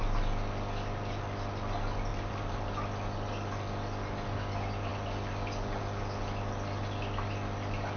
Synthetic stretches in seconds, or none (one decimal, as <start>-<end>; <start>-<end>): 2.1-2.7